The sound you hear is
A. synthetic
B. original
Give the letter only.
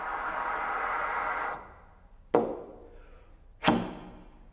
B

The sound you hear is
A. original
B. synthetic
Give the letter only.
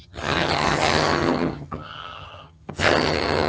B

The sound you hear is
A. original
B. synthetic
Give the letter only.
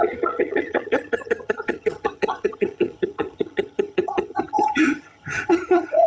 B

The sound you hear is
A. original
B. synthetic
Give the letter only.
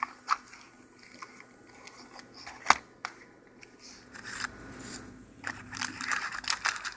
A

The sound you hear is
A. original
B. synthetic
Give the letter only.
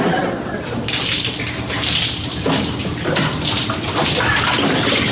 A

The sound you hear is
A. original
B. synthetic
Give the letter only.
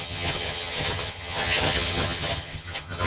B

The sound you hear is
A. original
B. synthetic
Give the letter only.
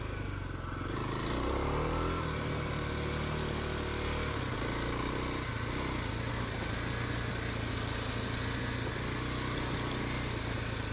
A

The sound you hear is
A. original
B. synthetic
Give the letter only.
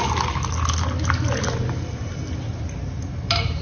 A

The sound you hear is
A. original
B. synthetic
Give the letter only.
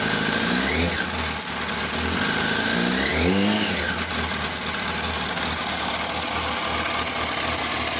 A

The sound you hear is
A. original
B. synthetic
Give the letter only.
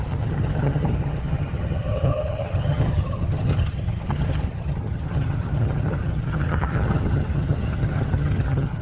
B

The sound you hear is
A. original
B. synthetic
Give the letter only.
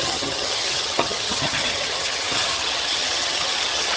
B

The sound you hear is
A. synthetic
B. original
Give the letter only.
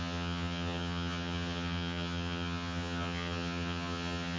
A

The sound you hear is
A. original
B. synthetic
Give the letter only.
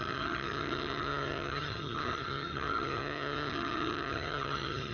B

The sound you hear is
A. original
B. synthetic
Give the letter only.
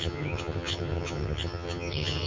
B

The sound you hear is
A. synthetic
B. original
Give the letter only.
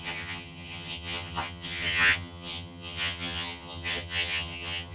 A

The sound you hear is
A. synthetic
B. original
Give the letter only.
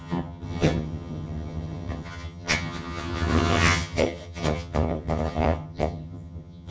A